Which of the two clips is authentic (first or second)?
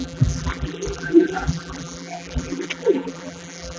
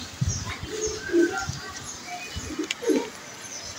second